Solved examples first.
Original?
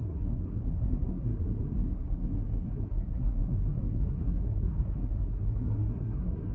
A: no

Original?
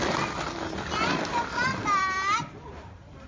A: yes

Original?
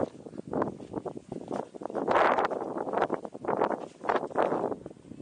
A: yes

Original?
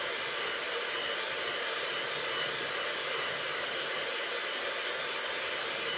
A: yes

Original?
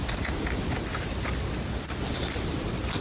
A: yes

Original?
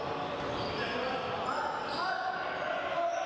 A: yes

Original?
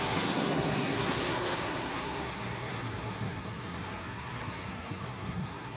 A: no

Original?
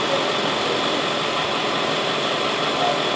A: yes